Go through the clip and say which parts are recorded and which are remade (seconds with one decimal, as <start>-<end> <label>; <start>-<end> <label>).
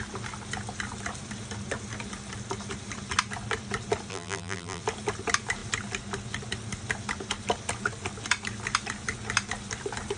0.0-4.1 recorded; 4.1-4.8 remade; 4.8-10.2 recorded